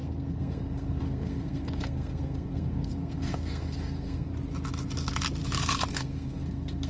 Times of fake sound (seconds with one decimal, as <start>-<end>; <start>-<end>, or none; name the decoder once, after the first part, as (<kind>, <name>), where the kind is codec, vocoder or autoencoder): 0.0-4.3 (codec, SNAC); 5.9-6.9